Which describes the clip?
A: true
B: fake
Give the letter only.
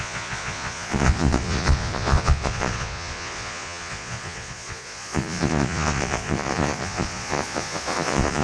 B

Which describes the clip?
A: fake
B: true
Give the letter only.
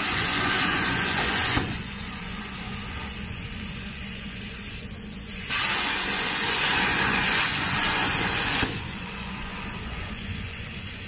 A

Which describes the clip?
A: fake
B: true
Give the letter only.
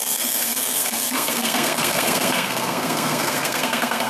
A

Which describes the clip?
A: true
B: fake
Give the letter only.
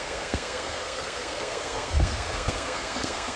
B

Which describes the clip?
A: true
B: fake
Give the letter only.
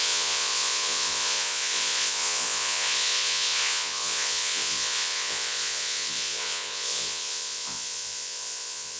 B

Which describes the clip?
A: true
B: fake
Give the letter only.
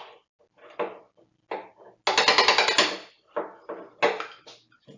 A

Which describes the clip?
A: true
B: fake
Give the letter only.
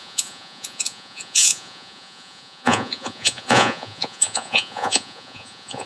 B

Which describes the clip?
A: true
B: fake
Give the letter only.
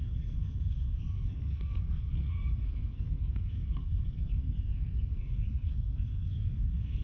B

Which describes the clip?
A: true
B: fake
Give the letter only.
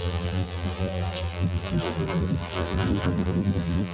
B